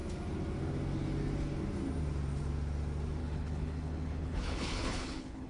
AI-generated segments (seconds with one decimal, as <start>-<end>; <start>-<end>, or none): 3.2-5.5